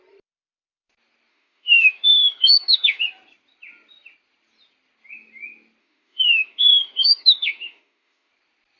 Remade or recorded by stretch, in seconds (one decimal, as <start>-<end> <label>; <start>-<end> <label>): 0.0-1.3 recorded; 1.3-3.0 remade; 3.0-5.8 recorded; 5.8-8.3 remade; 8.3-8.8 recorded